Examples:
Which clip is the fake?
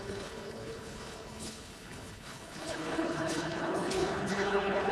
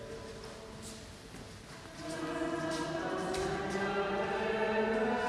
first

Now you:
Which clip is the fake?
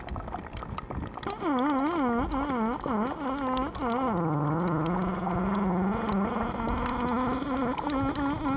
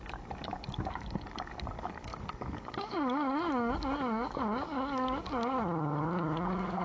second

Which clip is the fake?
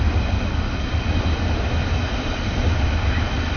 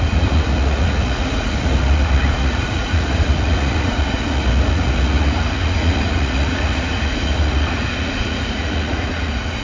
second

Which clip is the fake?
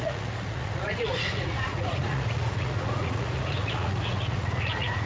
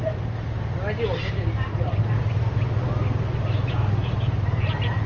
first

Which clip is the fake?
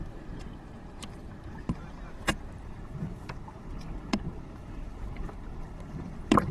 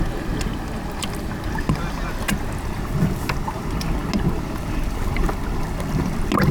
first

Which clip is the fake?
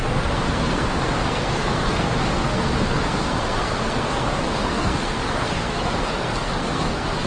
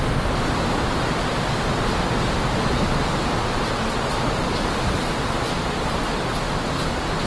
first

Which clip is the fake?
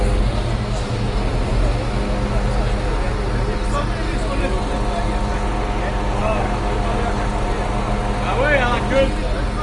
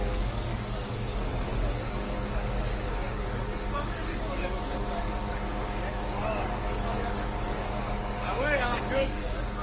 second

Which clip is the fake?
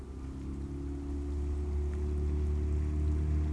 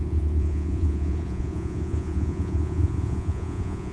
second